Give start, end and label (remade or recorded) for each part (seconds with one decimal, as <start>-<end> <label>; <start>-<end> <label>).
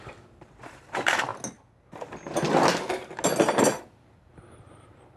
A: 0.0-1.3 remade; 1.3-3.8 recorded; 3.8-5.2 remade